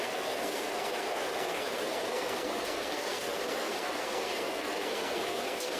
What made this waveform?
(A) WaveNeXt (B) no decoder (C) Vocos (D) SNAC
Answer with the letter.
D